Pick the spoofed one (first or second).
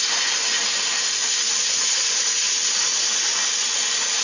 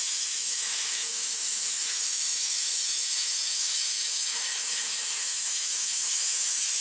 second